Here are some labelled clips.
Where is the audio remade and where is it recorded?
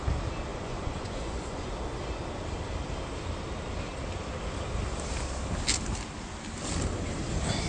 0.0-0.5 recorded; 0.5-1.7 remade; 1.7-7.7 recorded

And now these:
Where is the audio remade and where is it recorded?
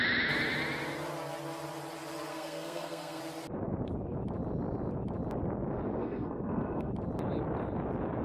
0.0-2.3 recorded; 2.3-3.2 remade; 3.2-6.0 recorded; 6.0-6.9 remade; 6.9-8.2 recorded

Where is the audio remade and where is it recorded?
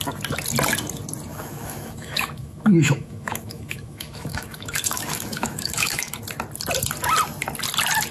0.0-1.3 recorded; 1.3-6.2 remade; 6.2-8.1 recorded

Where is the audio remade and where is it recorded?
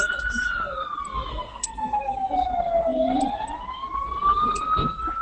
0.0-1.3 recorded; 1.3-2.3 remade; 2.3-5.2 recorded